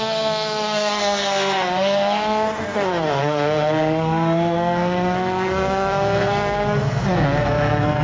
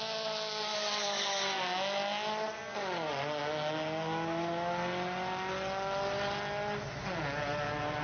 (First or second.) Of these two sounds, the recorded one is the second